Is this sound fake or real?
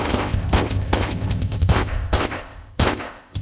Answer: fake